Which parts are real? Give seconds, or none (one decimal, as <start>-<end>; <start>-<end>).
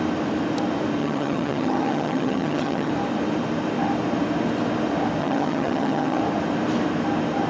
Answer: 0.0-1.0; 2.9-5.2; 6.2-7.5